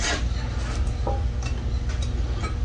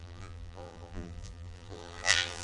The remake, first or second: second